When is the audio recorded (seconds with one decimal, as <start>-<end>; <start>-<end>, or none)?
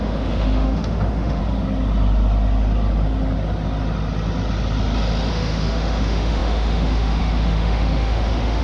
1.4-5.3